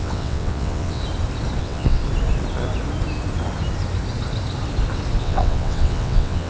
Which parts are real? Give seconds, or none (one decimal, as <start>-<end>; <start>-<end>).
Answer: 1.0-1.6; 2.0-5.2